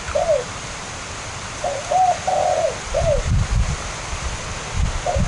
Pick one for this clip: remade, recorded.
recorded